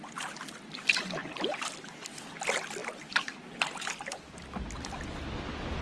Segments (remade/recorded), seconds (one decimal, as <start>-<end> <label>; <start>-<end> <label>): 0.0-5.8 recorded